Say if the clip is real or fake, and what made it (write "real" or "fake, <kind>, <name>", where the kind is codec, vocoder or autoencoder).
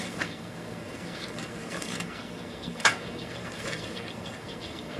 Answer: fake, codec, SNAC